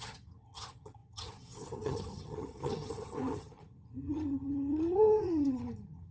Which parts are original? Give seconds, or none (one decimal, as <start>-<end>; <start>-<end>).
none